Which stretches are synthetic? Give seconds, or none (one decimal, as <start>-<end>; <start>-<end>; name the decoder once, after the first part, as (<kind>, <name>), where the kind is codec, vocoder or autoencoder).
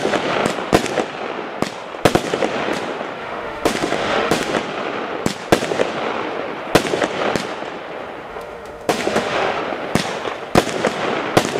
3.2-4.5 (autoencoder, DAC-VAE); 8.3-9.6